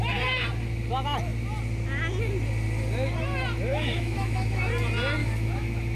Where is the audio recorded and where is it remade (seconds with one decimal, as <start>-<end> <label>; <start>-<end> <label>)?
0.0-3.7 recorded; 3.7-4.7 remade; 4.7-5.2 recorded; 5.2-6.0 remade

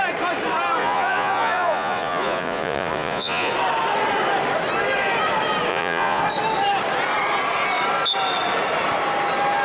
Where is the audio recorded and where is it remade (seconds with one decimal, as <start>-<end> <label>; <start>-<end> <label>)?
0.0-0.8 recorded; 0.8-3.5 remade; 3.5-5.7 recorded; 5.7-6.2 remade; 6.2-9.6 recorded

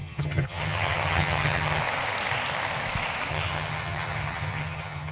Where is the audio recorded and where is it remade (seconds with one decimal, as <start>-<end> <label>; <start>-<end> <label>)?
0.0-1.8 remade; 1.8-3.3 recorded; 3.3-5.1 remade

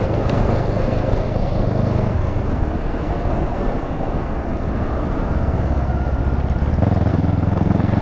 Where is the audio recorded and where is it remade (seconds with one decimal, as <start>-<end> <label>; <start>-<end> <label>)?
0.0-6.2 remade; 6.2-7.1 recorded; 7.1-8.0 remade

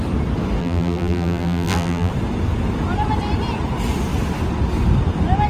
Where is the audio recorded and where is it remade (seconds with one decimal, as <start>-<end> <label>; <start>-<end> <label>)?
0.0-0.6 recorded; 0.6-2.1 remade; 2.1-5.5 recorded

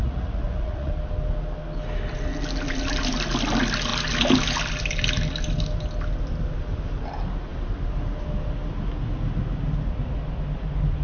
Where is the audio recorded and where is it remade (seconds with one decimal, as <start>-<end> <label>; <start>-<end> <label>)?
0.0-0.9 remade; 0.9-11.0 recorded

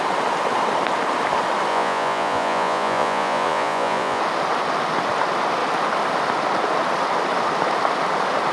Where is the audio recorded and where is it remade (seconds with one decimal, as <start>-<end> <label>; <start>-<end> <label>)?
0.0-1.7 recorded; 1.7-4.2 remade; 4.2-8.5 recorded